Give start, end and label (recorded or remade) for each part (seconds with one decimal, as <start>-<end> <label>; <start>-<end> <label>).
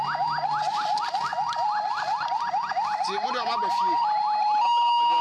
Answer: 0.0-5.2 recorded